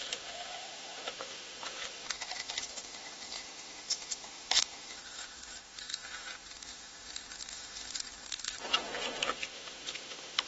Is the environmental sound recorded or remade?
remade